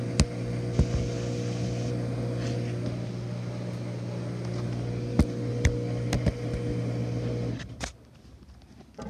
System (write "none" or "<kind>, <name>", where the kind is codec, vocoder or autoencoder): none